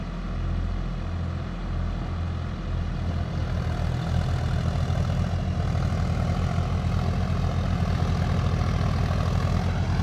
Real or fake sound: real